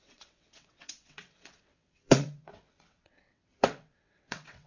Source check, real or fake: fake